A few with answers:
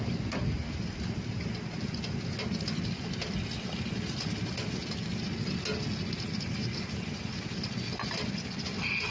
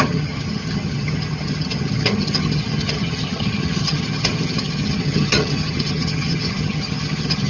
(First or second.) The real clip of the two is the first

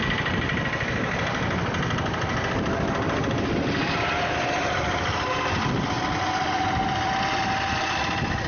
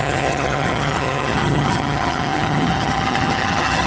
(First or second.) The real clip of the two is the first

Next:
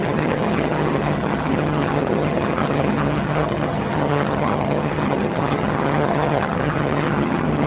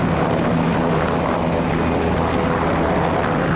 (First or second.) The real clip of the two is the second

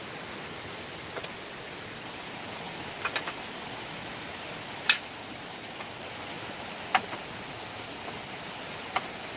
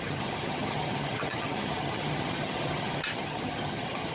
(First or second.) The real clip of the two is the first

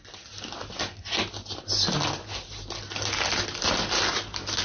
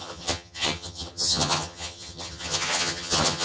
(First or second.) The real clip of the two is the first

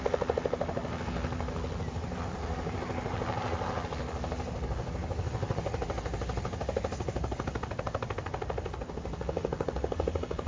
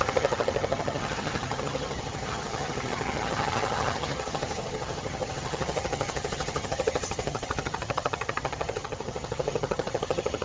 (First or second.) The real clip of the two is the first